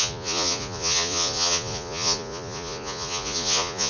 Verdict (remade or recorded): remade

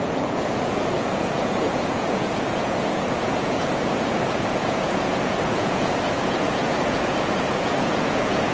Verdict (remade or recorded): remade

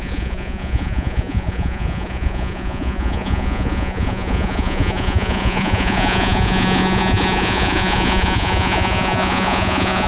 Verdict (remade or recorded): remade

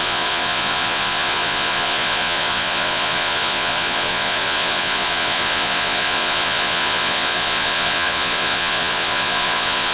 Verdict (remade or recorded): remade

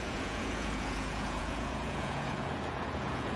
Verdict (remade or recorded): remade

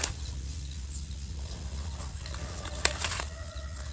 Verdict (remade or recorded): remade